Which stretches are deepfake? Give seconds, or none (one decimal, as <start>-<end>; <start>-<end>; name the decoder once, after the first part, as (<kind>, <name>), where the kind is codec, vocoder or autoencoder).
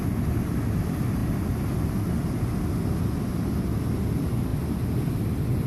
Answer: none